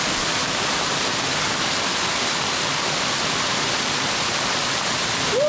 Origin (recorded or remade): remade